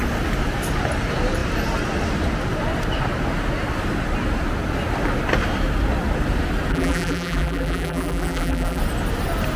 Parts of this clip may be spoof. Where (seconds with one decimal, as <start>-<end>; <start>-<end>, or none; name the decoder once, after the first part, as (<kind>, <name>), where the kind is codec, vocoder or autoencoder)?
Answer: 6.7-8.8 (vocoder, BigVGAN v2)